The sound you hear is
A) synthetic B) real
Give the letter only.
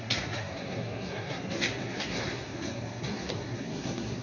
A